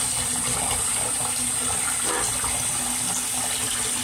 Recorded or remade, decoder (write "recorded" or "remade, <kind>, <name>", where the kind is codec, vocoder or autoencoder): recorded